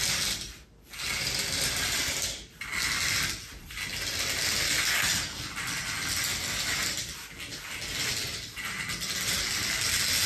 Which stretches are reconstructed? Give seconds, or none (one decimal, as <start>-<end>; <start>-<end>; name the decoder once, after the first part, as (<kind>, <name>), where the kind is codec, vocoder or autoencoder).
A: none